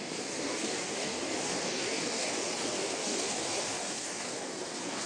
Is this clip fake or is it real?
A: fake